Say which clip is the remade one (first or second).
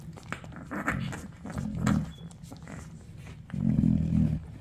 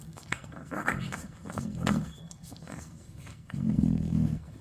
second